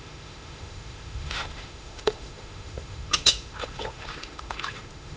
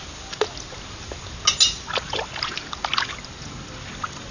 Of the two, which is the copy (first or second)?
first